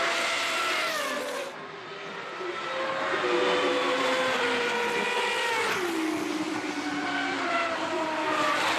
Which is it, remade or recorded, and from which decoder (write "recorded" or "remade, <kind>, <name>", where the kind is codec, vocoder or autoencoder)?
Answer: recorded